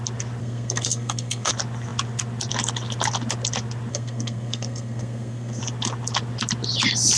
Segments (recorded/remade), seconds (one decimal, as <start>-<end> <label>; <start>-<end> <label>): 0.0-0.4 recorded; 0.4-1.5 remade; 1.5-3.9 recorded; 3.9-5.6 remade; 5.6-7.2 recorded